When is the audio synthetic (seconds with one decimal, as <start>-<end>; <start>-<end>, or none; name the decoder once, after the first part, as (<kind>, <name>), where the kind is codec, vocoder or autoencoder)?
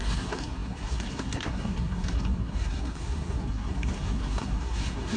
0.0-5.2 (codec, SNAC)